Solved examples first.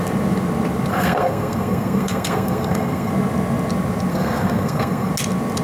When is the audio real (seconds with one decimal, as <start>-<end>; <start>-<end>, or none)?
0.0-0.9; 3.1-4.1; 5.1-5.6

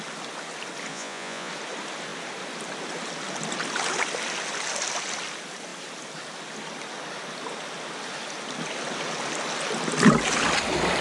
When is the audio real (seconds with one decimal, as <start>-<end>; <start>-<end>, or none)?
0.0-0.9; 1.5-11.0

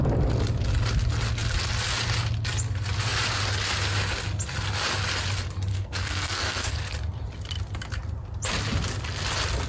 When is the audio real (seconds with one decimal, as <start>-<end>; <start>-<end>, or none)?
0.0-5.7; 6.7-9.7

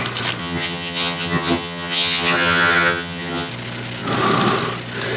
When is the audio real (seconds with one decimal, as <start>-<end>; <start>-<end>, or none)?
0.0-0.4; 3.5-5.2

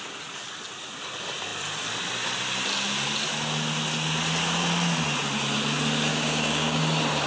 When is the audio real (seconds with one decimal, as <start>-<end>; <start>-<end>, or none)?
0.0-6.1; 6.8-7.3

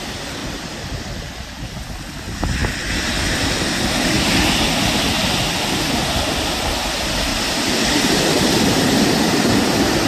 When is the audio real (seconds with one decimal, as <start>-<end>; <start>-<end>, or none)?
0.0-0.4; 1.7-7.3; 9.1-10.1